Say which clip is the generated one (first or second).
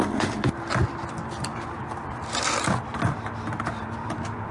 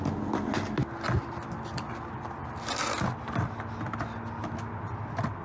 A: first